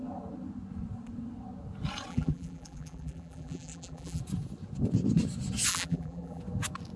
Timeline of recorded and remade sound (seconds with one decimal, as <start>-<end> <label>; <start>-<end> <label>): 0.0-2.1 recorded; 2.1-4.2 remade; 4.2-5.7 recorded; 5.7-6.4 remade; 6.4-7.0 recorded